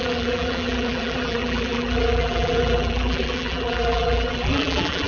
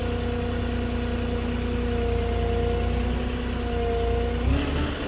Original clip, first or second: second